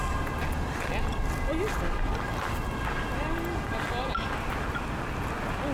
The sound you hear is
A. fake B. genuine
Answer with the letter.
B